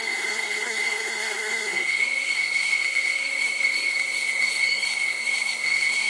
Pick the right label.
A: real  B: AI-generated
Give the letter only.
B